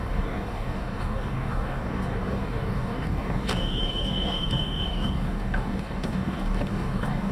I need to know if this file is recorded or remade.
remade